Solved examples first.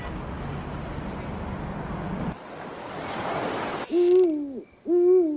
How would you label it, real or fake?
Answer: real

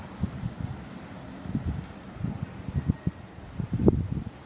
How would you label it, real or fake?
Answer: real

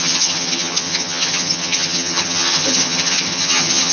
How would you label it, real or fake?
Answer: fake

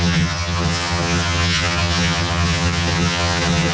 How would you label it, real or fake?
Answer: fake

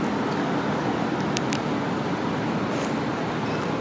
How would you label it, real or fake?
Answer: real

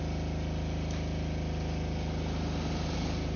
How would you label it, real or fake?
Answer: real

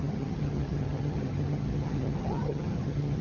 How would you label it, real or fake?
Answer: fake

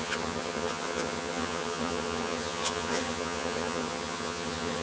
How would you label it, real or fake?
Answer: fake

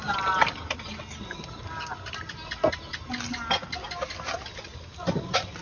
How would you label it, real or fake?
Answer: real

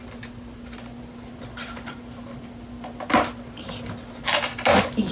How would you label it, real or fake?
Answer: real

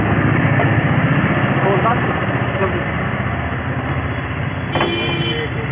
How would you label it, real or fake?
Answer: real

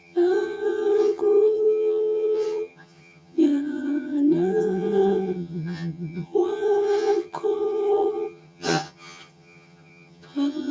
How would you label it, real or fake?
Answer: fake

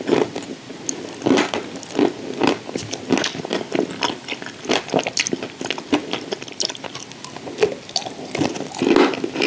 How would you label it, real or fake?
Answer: real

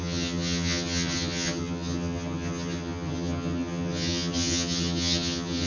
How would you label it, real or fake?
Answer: fake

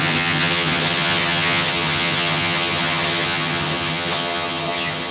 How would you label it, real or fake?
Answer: fake